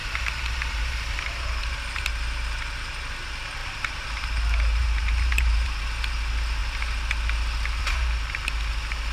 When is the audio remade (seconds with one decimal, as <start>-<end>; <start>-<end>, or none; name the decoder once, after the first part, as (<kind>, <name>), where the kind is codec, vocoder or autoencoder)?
0.0-2.0 (vocoder, BigVGAN v2); 3.6-4.2; 4.8-5.8

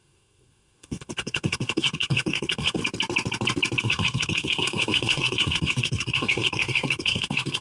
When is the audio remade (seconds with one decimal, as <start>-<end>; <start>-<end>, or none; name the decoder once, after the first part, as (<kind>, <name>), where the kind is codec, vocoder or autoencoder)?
0.0-2.8 (codec, SNAC); 3.8-7.6